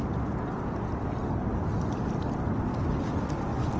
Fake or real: real